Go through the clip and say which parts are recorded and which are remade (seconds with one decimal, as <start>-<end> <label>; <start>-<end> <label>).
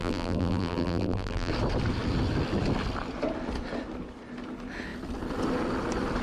0.0-1.5 remade; 1.5-6.2 recorded